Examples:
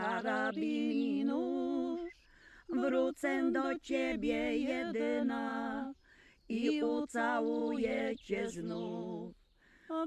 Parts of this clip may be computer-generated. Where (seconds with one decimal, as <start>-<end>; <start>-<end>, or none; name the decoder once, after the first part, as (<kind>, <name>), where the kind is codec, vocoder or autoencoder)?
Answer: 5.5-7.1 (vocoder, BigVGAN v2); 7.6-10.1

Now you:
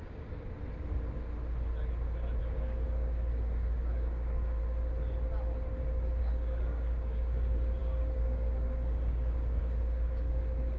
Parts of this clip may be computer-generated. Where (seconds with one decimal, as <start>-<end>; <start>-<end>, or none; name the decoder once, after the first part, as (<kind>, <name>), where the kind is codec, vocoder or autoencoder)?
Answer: 0.0-0.6 (codec, DAC); 2.4-4.6; 6.2-10.8

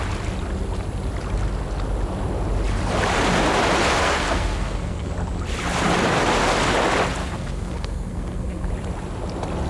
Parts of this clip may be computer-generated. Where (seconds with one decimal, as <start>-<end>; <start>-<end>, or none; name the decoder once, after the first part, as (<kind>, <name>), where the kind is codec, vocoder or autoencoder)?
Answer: 4.0-5.1 (codec, SNAC); 7.2-8.7